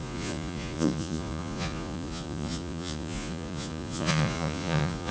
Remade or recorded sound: remade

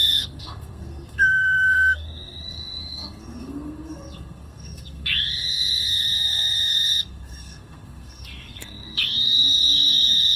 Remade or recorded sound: remade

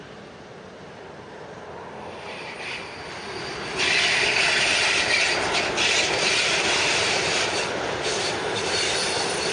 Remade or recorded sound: remade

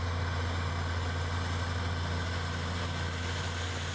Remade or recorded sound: recorded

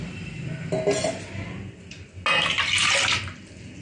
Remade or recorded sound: recorded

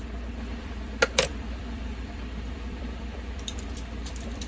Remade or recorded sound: remade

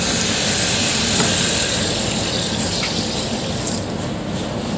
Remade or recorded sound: remade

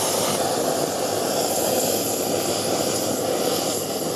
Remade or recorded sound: recorded